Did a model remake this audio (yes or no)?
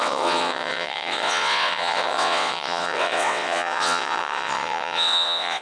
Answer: yes